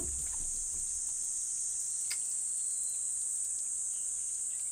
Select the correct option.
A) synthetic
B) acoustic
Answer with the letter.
B